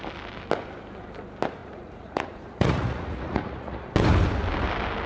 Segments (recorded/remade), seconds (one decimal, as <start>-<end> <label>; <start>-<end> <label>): 0.0-1.6 recorded; 1.6-3.9 remade; 3.9-5.1 recorded